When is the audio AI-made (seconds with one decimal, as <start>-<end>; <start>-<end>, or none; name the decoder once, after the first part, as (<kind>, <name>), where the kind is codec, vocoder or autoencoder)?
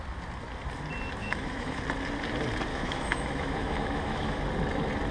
1.2-1.8 (autoencoder, DAC-VAE); 2.7-4.4